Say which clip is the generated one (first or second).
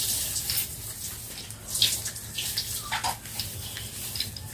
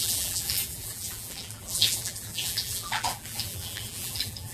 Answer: second